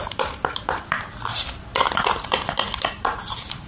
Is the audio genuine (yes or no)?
no